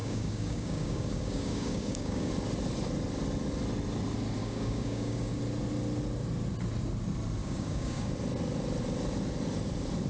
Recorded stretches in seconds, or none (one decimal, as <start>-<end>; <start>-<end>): 2.3-4.4; 5.4-7.4; 8.1-10.1